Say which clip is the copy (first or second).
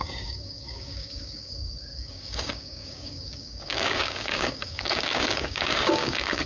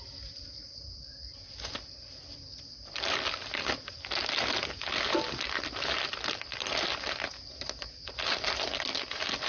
first